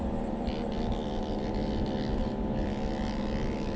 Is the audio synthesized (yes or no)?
no